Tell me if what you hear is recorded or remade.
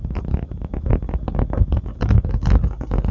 recorded